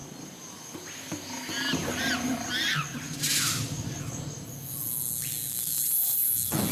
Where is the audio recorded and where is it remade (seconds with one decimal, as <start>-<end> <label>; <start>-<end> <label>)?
0.0-6.7 recorded